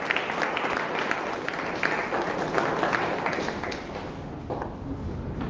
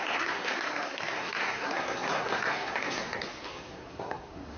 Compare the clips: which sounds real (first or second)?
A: first